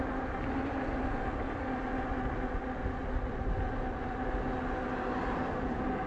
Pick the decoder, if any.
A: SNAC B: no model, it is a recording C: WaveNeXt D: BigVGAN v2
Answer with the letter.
B